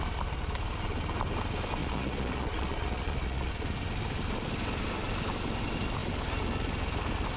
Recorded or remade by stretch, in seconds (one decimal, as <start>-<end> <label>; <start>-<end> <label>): 0.0-1.8 recorded; 1.8-3.5 remade; 3.5-7.4 recorded

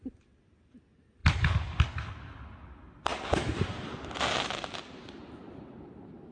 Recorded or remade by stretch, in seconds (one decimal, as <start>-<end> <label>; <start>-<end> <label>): 0.0-6.3 recorded

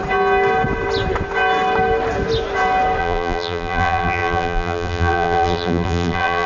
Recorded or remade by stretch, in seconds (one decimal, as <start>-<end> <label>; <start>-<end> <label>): 0.0-3.0 recorded; 3.0-6.5 remade

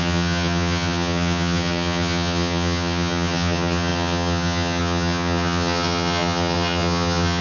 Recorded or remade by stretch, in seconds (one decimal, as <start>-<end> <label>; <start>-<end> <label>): 0.0-7.4 remade

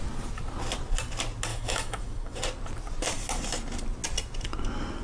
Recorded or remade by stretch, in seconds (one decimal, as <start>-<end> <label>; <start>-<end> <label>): 0.0-1.5 recorded; 1.5-2.4 remade; 2.4-5.0 recorded

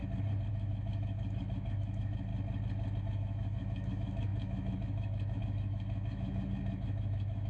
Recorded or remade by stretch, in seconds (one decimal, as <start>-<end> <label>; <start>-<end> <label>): 0.0-0.5 recorded; 0.5-2.3 remade; 2.3-3.0 recorded; 3.0-7.5 remade